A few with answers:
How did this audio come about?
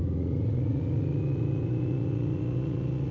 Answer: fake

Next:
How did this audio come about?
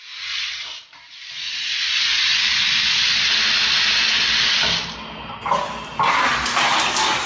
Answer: real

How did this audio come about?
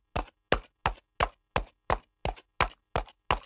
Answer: real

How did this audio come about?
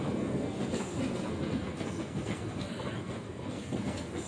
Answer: fake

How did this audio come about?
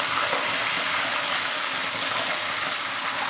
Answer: real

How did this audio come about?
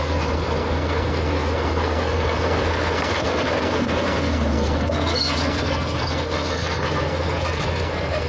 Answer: fake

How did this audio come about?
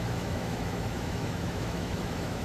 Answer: fake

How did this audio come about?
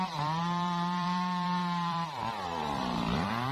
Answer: fake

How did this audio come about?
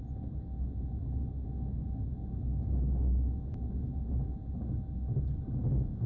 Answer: real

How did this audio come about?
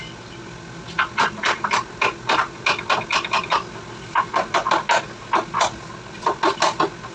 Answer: real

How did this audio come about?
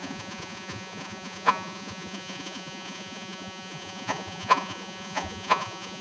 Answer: fake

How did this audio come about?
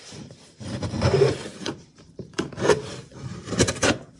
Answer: fake